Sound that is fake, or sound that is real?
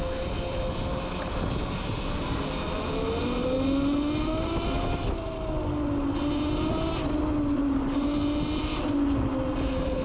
real